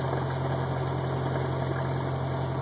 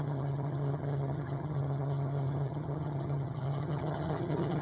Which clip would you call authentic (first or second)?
first